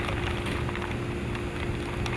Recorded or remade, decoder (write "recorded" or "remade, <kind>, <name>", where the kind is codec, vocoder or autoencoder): recorded